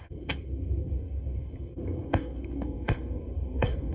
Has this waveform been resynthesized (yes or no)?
yes